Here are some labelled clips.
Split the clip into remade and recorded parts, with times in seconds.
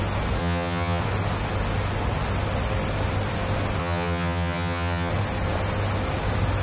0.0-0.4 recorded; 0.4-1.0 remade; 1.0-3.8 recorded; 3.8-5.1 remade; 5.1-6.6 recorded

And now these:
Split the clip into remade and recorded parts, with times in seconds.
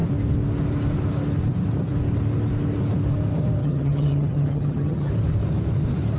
0.0-3.6 recorded; 3.6-5.1 remade; 5.1-6.2 recorded